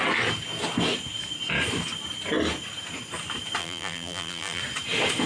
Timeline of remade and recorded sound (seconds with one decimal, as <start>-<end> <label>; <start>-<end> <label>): 0.0-3.6 recorded; 3.6-4.6 remade; 4.6-5.3 recorded